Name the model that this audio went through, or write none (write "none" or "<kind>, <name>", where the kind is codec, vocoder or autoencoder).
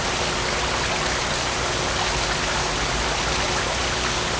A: none